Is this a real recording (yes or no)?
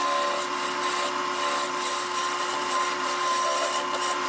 yes